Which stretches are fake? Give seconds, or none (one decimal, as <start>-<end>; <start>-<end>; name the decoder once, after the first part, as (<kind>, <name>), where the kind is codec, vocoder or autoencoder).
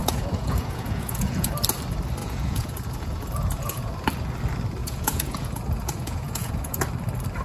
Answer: 0.0-1.5 (vocoder, Vocos); 2.2-3.9; 4.8-6.8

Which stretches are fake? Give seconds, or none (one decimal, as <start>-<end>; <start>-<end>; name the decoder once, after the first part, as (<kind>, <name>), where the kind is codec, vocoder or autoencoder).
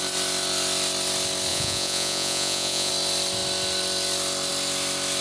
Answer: 1.5-2.9 (vocoder, Vocos)